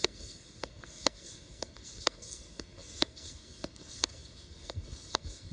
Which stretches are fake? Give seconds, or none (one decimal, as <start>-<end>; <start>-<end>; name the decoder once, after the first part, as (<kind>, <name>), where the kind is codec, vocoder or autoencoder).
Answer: 0.0-5.5 (codec, SNAC)